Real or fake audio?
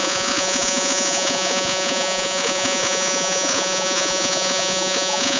fake